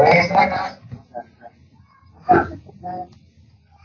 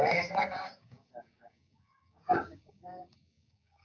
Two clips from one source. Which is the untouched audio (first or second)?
first